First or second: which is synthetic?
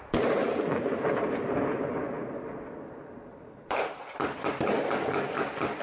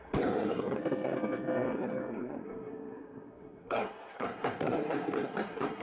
second